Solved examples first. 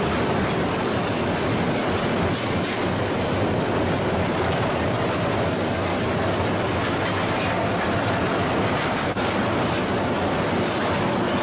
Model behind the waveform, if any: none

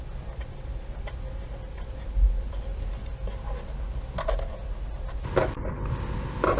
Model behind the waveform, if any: none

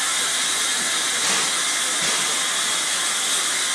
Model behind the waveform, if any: none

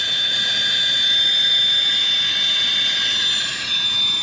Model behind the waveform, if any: none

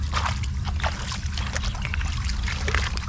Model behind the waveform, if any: none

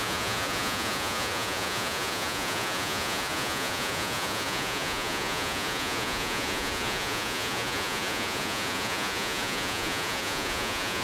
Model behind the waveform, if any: vocoder, Vocos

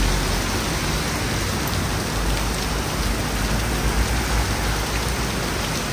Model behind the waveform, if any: none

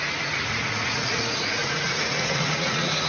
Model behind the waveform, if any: vocoder, Vocos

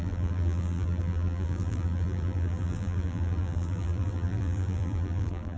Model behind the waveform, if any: vocoder, BigVGAN v2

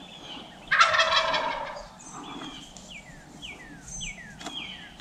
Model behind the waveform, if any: none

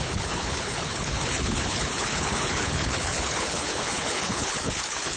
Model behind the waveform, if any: codec, HILCodec